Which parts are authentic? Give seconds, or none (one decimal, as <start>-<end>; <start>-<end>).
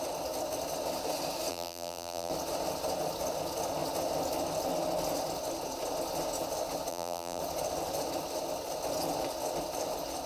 0.0-1.5; 2.3-6.9; 7.4-10.3